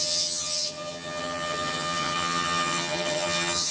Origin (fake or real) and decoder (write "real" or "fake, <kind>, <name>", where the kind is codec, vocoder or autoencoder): fake, vocoder, HiFi-GAN